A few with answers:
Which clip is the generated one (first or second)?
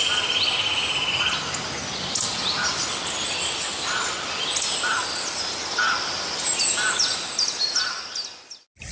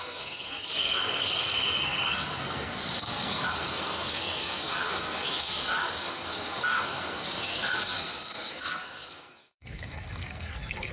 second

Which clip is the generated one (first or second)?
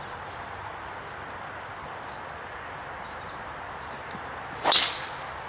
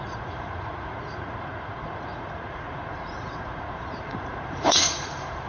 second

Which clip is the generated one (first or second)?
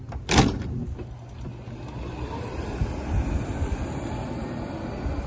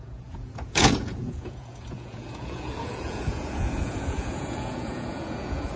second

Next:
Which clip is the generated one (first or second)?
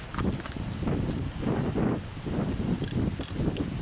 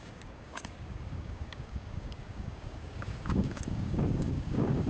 second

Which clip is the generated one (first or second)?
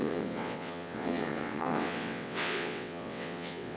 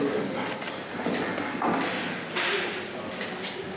first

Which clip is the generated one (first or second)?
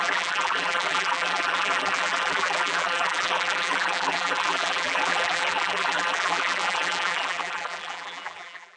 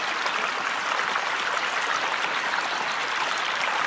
first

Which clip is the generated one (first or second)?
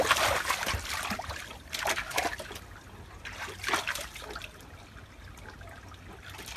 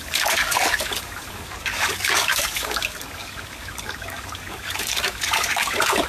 second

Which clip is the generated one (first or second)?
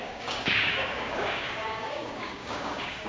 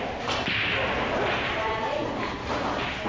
first